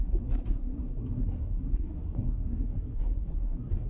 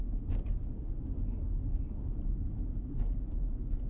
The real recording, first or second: second